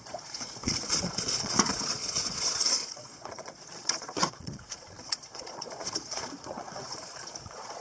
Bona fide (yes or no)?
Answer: no